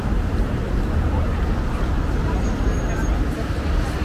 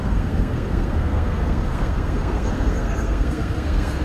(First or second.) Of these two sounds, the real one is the first